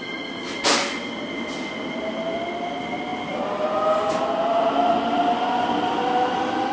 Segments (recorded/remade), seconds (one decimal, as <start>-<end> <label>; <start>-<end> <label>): 0.0-6.7 recorded